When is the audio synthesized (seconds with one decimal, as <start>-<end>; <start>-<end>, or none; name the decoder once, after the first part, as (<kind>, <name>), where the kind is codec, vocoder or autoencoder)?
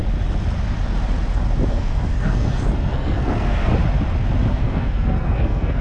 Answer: 1.7-3.7 (codec, SNAC); 4.5-5.8